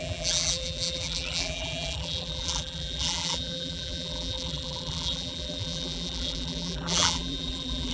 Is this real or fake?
fake